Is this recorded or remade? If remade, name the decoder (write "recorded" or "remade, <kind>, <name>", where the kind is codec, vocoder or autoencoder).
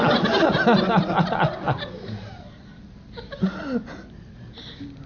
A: recorded